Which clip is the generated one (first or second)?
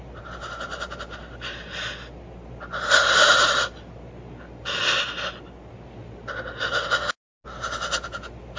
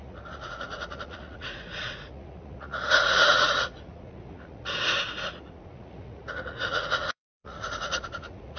second